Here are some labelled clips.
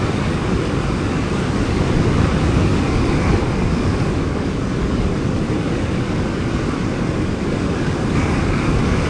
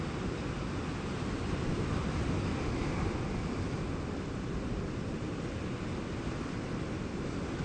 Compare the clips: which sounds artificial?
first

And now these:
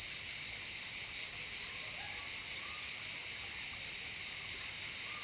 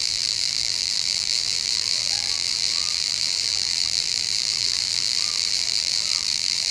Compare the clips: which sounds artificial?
second